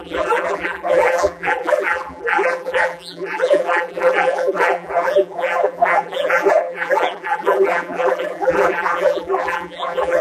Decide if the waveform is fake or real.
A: fake